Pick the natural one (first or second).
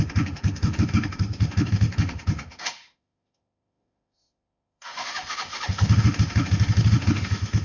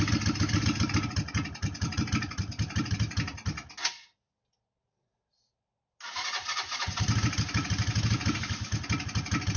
second